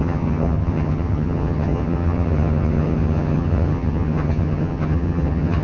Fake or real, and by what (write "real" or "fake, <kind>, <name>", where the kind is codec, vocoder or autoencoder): fake, vocoder, HiFi-GAN